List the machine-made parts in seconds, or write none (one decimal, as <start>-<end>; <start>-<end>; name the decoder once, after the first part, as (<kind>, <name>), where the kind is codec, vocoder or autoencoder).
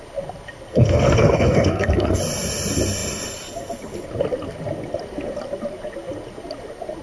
0.7-2.2 (codec, SNAC)